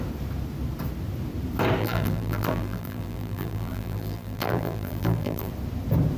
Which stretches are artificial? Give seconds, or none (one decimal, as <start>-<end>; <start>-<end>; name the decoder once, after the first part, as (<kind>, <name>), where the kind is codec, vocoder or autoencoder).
1.8-5.5 (vocoder, BigVGAN v2)